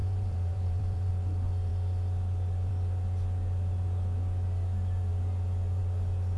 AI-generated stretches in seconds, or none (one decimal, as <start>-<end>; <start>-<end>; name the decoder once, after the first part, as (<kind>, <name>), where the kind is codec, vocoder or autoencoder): 0.0-1.1 (vocoder, BigVGAN v2)